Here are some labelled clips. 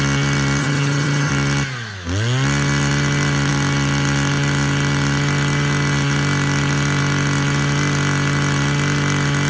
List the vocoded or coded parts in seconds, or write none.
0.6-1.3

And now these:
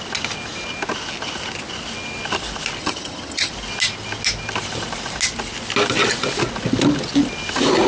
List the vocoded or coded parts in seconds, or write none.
2.8-3.5

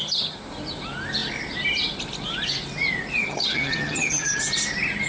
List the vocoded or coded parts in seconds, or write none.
3.2-4.4

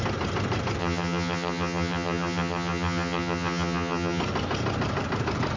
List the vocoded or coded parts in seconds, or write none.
0.8-4.2

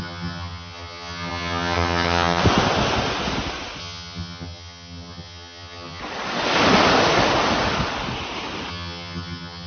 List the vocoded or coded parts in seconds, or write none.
0.0-2.4; 3.8-6.0; 8.7-9.7

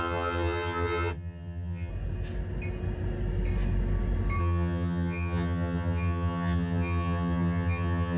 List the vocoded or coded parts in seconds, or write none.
0.0-1.9; 4.4-8.2

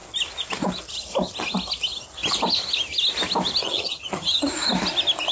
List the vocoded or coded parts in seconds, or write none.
3.6-4.5